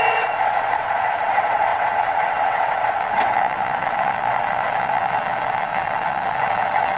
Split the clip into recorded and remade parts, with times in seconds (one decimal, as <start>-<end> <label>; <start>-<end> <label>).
0.0-7.0 remade